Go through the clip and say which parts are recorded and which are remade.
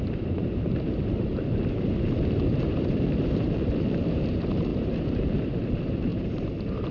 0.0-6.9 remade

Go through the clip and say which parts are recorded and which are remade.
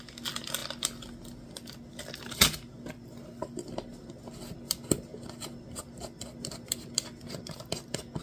0.0-8.2 recorded